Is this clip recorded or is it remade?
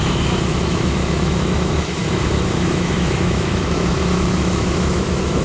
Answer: remade